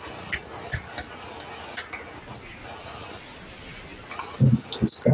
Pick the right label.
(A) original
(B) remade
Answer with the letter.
A